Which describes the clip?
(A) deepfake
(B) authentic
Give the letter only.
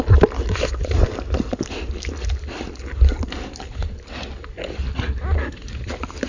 B